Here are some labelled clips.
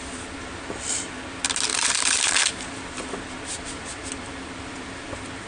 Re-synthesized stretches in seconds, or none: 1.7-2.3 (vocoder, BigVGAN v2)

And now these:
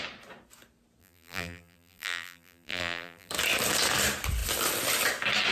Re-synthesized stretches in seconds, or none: 1.0-3.3 (vocoder, BigVGAN v2)

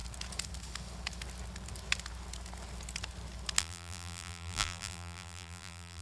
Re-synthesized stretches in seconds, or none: 3.6-6.0 (vocoder, BigVGAN v2)

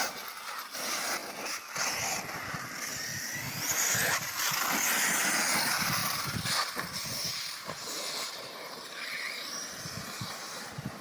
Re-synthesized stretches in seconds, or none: 6.0-11.0 (vocoder, BigVGAN v2)

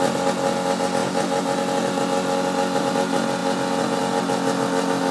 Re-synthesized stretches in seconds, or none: none

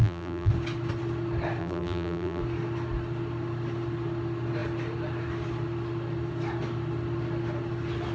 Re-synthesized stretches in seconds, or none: 0.0-0.5 (vocoder, BigVGAN v2); 1.6-2.4